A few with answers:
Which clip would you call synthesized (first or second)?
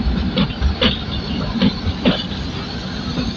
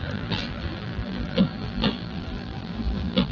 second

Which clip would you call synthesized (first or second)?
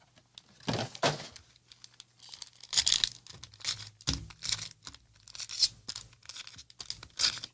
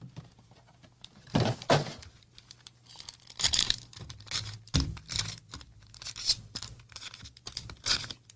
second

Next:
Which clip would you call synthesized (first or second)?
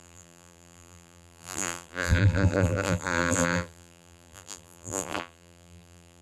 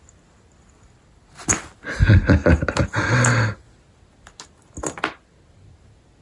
first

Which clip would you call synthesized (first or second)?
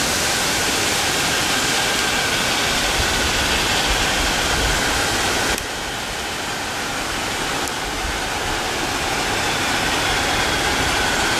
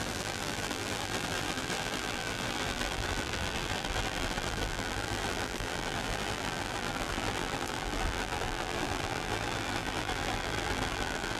second